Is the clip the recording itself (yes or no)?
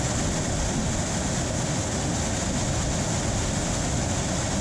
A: yes